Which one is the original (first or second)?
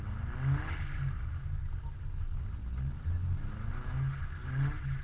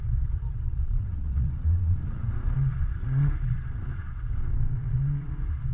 first